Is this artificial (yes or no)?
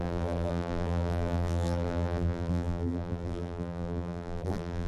yes